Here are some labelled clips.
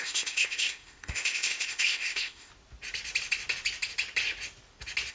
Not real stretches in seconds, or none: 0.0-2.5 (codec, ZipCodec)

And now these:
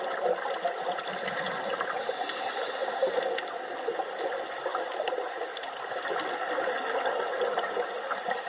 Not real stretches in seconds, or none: none

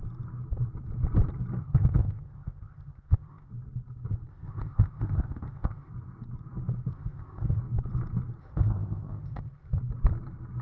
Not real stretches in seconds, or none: 1.6-3.5 (codec, ZipCodec); 4.3-5.9; 6.9-7.6; 8.4-9.8

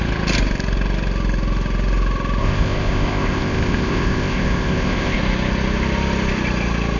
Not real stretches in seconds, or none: 2.4-5.2 (codec, ZipCodec)